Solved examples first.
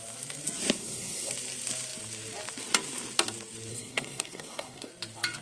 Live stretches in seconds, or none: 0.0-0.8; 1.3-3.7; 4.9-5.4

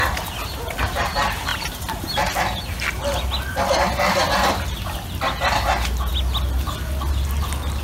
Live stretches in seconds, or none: 0.0-7.8

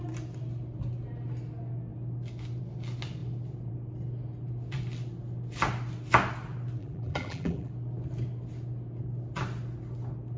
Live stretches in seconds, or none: 0.0-6.8; 7.7-10.4

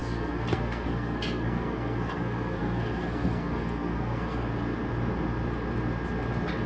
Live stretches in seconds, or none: 4.5-6.7

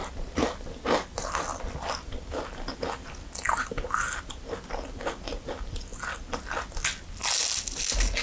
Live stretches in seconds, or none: 0.0-8.2

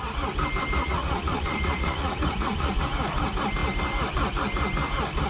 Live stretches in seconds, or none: 0.0-0.8; 2.8-5.3